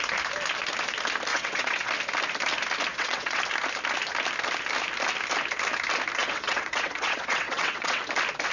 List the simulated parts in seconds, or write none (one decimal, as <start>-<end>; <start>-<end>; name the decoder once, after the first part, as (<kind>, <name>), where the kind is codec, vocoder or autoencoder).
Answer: 1.3-1.9 (vocoder, WaveNeXt); 2.9-3.4; 6.2-8.0